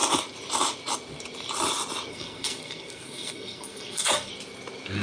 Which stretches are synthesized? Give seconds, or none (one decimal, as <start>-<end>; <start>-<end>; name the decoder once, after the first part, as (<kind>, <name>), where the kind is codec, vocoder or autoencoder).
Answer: 2.1-4.3 (codec, SNAC)